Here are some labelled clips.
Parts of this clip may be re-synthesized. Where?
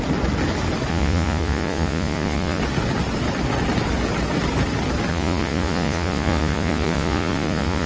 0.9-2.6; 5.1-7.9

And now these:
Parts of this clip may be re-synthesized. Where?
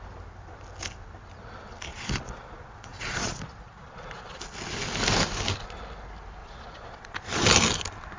1.9-4.4; 6.4-7.2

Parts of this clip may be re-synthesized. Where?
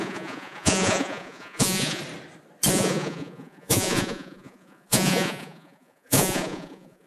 0.0-2.0; 2.7-7.1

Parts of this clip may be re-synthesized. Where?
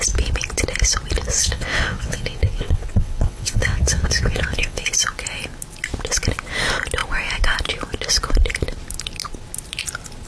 1.4-4.9